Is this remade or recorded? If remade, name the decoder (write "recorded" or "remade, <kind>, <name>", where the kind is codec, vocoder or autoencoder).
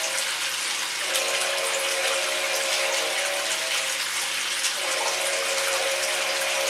recorded